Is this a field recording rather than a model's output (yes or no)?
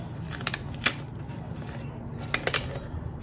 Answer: yes